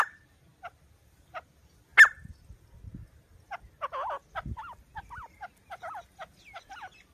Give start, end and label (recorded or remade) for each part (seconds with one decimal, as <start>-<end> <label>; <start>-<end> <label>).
0.0-7.1 recorded